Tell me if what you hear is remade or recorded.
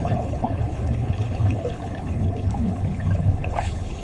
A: remade